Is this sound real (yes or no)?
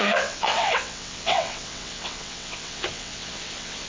no